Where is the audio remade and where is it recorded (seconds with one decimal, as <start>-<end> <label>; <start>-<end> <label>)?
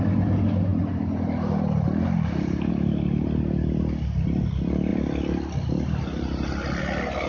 0.0-7.3 recorded